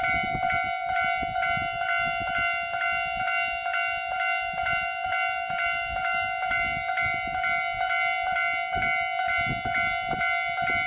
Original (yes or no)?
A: yes